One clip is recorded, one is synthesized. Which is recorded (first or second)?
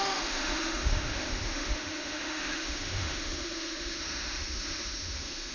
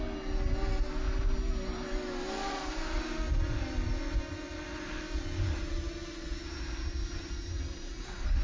second